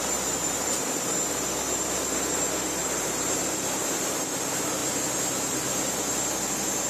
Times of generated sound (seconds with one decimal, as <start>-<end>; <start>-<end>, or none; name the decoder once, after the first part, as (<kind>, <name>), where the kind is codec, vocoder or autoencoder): 0.0-1.1 (vocoder, BigVGAN v2); 2.8-4.2